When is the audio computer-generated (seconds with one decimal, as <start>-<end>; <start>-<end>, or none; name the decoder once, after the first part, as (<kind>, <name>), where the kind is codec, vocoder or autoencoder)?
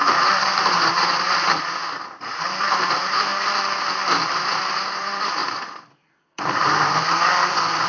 0.0-3.3 (vocoder, BigVGAN v2); 4.4-7.9